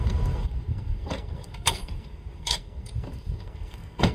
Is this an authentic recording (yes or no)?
no